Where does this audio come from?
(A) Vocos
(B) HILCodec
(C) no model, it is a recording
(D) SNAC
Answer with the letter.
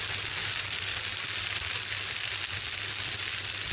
C